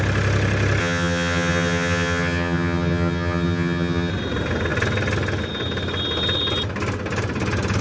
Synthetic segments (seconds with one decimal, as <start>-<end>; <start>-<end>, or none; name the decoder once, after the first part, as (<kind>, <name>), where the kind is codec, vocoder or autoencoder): 0.8-4.1 (vocoder, HiFi-GAN)